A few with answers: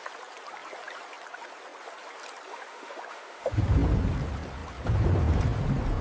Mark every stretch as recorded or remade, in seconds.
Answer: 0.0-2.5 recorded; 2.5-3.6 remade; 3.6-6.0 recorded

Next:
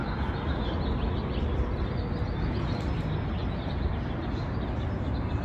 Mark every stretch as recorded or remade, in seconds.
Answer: 0.0-5.4 recorded

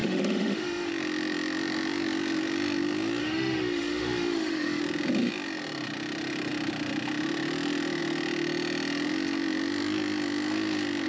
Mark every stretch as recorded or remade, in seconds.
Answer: 0.0-0.9 remade; 0.9-3.2 recorded; 3.2-4.8 remade; 4.8-11.1 recorded

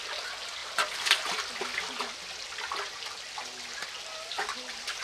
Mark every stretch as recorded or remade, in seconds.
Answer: 0.0-5.0 recorded